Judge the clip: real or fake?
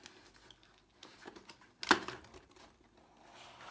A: real